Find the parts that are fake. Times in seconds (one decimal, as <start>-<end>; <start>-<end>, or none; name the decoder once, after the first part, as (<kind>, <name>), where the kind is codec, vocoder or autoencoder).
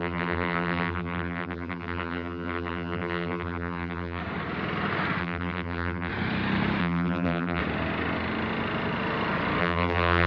0.0-4.2 (vocoder, BigVGAN v2); 5.2-6.1; 6.8-7.6; 9.6-10.3